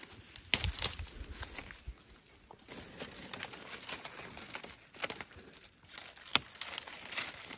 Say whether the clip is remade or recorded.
recorded